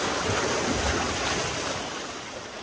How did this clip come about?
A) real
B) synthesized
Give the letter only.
A